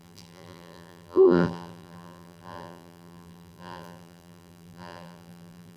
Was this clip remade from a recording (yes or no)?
yes